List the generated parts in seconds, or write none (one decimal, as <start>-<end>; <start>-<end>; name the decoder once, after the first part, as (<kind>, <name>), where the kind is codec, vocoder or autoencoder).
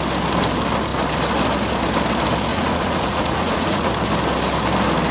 2.5-3.9 (vocoder, Vocos)